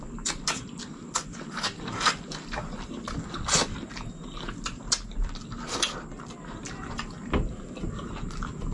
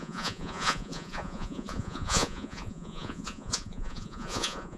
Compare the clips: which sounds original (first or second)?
first